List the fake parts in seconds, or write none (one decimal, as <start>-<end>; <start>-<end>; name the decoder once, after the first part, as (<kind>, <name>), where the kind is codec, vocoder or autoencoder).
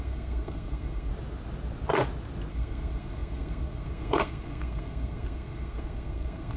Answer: 0.0-1.1 (codec, SNAC); 2.5-6.6